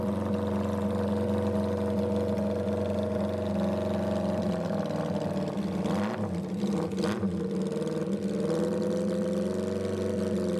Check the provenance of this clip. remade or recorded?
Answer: recorded